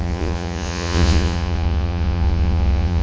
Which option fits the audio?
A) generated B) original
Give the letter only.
A